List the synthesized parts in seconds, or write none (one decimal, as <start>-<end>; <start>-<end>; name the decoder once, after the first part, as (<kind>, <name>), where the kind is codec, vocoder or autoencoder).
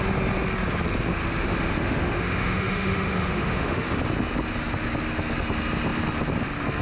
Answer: 1.1-4.0 (autoencoder, DAC-VAE)